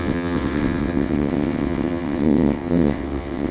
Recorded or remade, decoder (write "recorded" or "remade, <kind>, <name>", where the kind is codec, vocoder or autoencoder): remade, vocoder, WaveNeXt